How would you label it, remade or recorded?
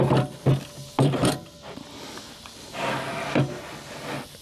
recorded